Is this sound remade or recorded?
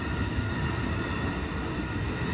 recorded